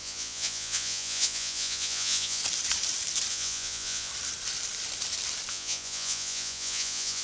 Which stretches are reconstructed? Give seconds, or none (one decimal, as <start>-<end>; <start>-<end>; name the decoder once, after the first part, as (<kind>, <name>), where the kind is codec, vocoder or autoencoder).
0.0-2.4 (vocoder, Vocos); 3.3-4.1; 5.5-7.2